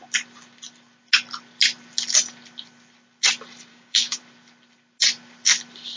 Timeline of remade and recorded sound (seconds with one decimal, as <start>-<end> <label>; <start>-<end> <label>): 0.0-3.7 recorded; 3.7-4.2 remade; 4.2-6.0 recorded